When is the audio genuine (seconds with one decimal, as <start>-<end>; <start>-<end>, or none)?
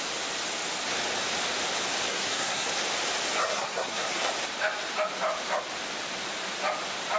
0.0-2.1; 2.7-3.4; 4.3-7.2